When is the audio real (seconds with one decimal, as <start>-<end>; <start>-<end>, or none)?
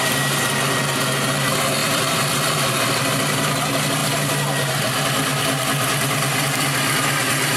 0.0-1.8; 3.1-7.6